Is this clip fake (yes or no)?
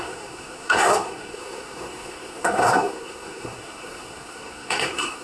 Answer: yes